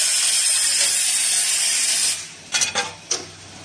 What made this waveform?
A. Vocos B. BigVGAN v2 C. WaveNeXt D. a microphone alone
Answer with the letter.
D